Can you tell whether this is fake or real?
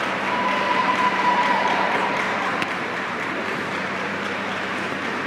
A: fake